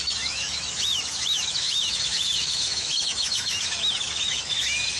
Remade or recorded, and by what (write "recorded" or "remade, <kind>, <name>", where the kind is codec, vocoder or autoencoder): remade, autoencoder, DAC-VAE